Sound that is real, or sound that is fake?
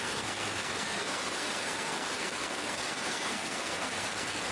fake